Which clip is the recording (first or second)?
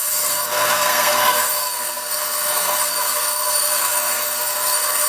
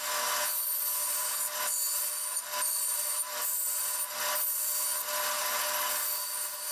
second